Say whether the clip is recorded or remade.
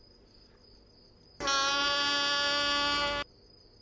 recorded